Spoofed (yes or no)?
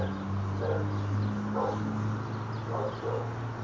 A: no